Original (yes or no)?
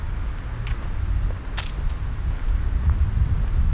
yes